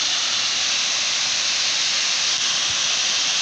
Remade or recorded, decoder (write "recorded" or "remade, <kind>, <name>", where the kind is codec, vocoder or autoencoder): recorded